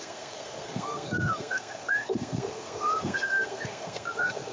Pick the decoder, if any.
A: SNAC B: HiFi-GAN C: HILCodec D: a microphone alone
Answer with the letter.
A